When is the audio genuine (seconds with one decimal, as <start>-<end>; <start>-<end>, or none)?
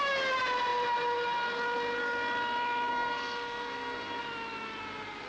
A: 0.0-2.9; 4.2-5.3